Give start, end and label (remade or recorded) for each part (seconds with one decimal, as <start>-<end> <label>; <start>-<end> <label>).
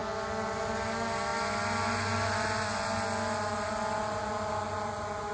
0.0-5.3 recorded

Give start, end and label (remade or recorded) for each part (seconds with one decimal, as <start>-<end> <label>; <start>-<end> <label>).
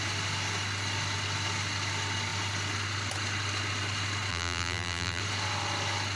0.0-4.3 recorded; 4.3-5.2 remade; 5.2-6.2 recorded